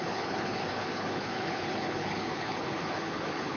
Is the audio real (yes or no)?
no